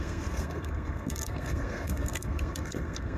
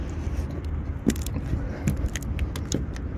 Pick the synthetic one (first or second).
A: first